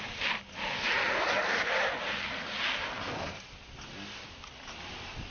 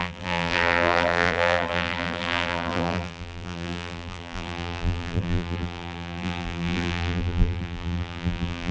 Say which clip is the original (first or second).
first